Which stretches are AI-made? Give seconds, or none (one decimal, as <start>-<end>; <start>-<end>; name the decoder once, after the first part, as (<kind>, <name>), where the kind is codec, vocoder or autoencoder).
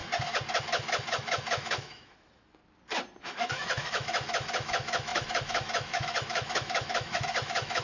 0.6-2.6 (autoencoder, DAC-VAE); 3.2-7.8